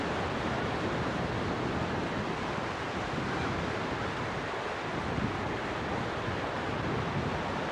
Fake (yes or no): no